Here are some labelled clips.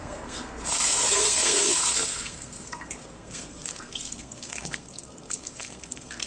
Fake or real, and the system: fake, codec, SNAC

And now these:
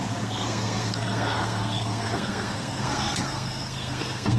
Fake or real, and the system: fake, codec, SNAC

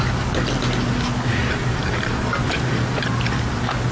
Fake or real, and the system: real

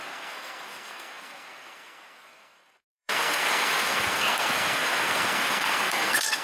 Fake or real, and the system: fake, codec, SNAC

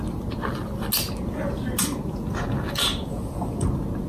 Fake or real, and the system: real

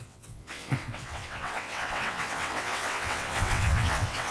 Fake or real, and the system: fake, vocoder, WaveNeXt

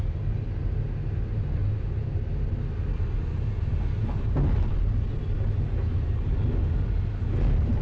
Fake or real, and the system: real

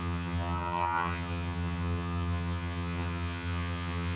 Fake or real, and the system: fake, vocoder, HiFi-GAN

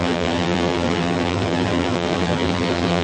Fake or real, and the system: fake, vocoder, BigVGAN v2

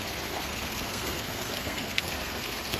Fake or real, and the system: fake, codec, SNAC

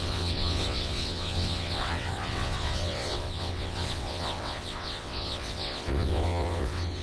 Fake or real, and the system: fake, vocoder, WaveNeXt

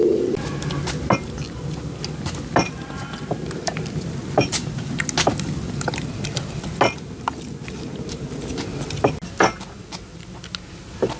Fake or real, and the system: real